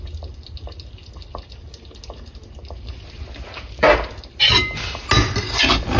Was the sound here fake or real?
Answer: real